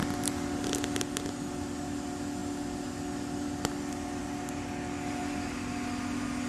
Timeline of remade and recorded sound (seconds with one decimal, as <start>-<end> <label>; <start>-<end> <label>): 0.0-6.5 recorded